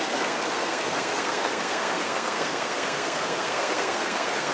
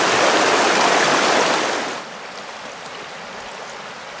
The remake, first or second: first